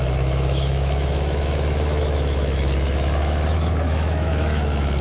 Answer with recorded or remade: remade